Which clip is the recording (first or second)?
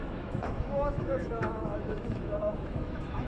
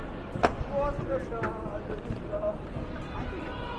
second